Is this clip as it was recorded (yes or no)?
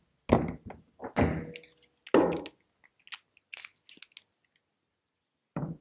yes